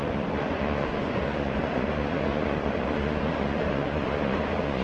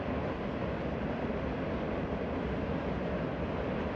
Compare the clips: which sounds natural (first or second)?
second